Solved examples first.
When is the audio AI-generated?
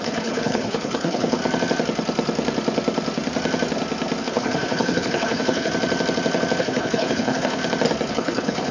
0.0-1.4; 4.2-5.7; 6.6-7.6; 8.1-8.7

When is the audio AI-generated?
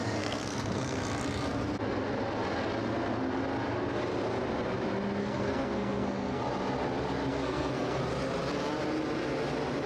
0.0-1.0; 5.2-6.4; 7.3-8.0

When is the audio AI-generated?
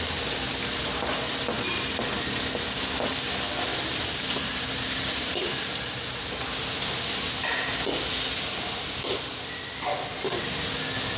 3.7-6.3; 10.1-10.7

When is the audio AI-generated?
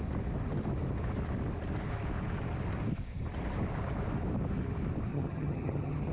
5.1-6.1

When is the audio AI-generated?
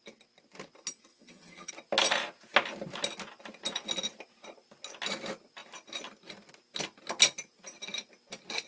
1.1-1.7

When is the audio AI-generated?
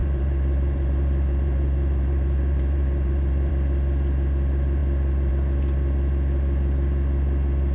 0.0-3.5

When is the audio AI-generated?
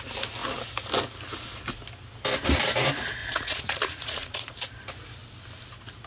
3.2-4.5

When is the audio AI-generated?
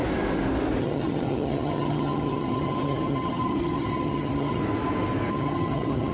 0.8-4.6; 5.3-6.1